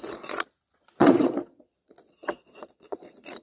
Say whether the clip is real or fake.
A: fake